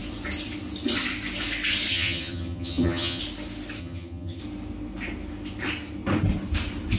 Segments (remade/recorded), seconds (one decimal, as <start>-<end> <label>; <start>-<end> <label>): 0.0-1.9 recorded; 1.9-3.2 remade; 3.2-3.8 recorded; 3.8-4.4 remade; 4.4-7.0 recorded